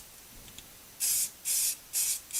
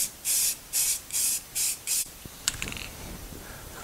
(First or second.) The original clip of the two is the first